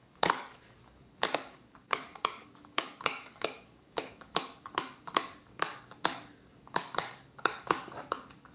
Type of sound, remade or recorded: remade